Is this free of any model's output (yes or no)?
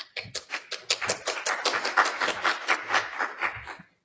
yes